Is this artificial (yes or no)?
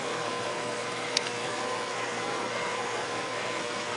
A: yes